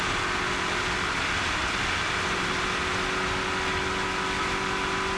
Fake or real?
real